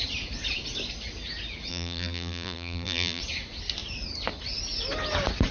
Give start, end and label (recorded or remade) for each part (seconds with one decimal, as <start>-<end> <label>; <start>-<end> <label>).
0.0-1.7 recorded; 1.7-3.2 remade; 3.2-5.5 recorded